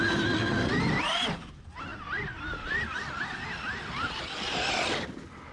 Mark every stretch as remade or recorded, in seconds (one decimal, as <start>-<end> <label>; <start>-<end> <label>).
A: 0.0-5.5 recorded

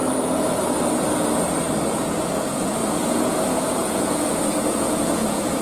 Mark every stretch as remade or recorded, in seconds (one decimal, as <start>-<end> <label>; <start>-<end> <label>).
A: 0.0-1.9 recorded; 1.9-5.6 remade

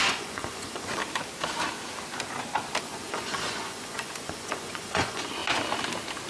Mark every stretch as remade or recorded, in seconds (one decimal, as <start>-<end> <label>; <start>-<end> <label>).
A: 0.0-1.0 remade; 1.0-2.8 recorded; 2.8-5.4 remade; 5.4-6.3 recorded